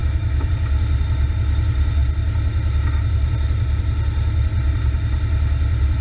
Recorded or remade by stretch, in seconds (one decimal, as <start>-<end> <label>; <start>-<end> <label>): 0.0-0.5 remade; 0.5-6.0 recorded